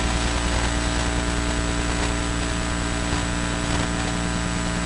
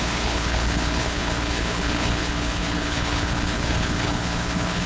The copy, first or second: second